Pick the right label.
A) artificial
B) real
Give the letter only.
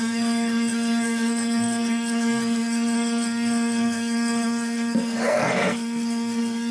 A